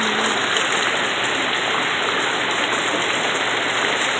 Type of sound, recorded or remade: recorded